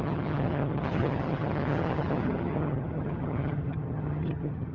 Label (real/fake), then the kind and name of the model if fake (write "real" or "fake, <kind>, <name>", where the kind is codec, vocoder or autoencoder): fake, vocoder, HiFi-GAN